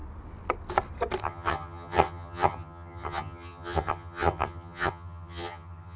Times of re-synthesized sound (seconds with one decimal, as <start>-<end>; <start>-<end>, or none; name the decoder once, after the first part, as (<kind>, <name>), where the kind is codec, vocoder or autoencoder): 1.2-6.0 (vocoder, HiFi-GAN)